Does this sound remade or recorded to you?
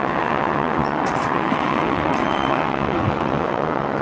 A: remade